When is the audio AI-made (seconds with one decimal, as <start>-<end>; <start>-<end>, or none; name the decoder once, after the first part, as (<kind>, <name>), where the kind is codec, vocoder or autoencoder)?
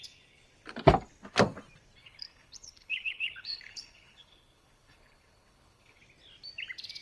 2.0-6.0 (codec, HILCodec)